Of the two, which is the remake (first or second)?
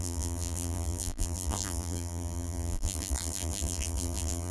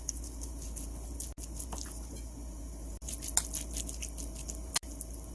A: first